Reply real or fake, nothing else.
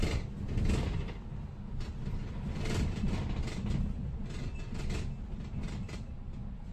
real